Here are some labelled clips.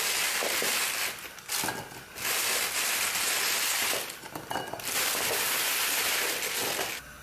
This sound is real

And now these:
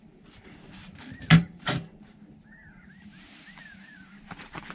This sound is real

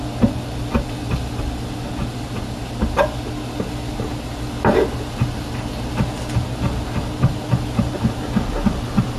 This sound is real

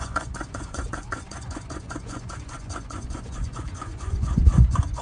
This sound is fake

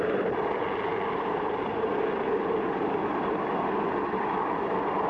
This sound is real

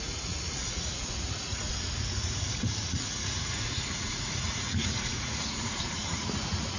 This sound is fake